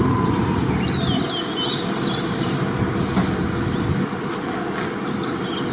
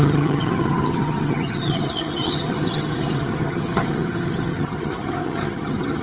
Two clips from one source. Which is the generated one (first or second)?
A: second